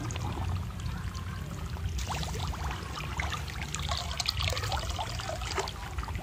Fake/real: real